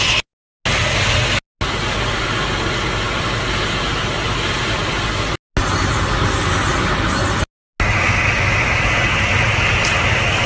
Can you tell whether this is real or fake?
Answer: real